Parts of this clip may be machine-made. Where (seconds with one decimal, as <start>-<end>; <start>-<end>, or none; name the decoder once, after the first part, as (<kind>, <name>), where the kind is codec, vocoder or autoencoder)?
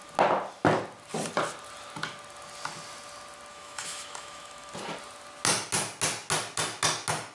3.5-4.7 (autoencoder, DAC-VAE)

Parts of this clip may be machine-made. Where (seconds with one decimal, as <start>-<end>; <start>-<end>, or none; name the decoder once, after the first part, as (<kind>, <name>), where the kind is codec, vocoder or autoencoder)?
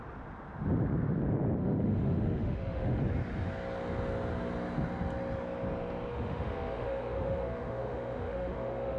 1.6-3.0 (autoencoder, DAC-VAE); 6.1-9.0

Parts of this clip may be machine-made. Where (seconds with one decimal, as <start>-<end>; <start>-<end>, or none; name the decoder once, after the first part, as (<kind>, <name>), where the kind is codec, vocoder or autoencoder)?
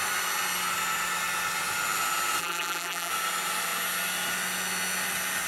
2.4-3.1 (vocoder, BigVGAN v2)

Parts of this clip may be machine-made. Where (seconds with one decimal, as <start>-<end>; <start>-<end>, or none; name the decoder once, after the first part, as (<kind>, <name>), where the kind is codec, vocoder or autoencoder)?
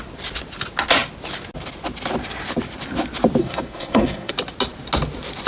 3.4-4.3 (codec, SNAC)